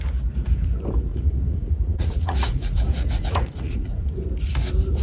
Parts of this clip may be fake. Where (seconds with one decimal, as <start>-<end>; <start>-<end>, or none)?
1.1-4.1